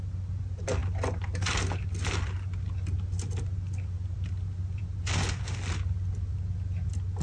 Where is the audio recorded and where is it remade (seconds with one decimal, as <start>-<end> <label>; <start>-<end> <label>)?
0.0-7.2 recorded

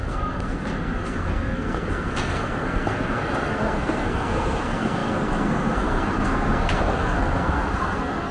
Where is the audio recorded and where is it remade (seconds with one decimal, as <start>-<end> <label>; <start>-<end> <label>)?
0.0-8.3 remade

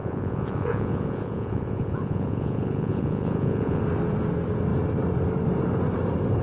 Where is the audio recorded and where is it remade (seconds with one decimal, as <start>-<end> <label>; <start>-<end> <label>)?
0.0-3.8 remade; 3.8-6.4 recorded

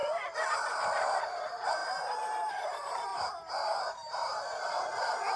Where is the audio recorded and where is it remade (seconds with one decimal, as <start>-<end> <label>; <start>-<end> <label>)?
0.0-1.2 recorded; 1.2-3.1 remade; 3.1-5.4 recorded

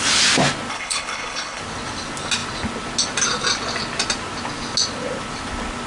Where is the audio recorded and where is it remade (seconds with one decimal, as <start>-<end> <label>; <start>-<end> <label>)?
0.0-0.7 recorded; 0.7-1.6 remade; 1.6-5.9 recorded

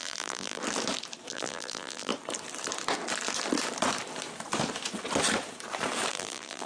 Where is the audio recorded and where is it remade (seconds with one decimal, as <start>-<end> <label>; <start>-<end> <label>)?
0.0-0.6 remade; 0.6-1.3 recorded; 1.3-2.1 remade; 2.1-6.1 recorded; 6.1-6.7 remade